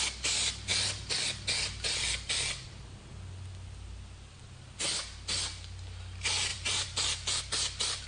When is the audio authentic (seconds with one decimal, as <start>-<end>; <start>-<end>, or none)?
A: 0.0-6.5; 7.4-8.1